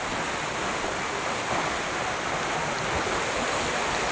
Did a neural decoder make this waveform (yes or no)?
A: no